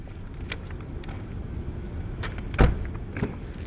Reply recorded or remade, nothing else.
recorded